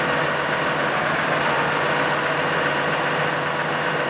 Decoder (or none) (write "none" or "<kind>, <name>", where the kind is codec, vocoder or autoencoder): none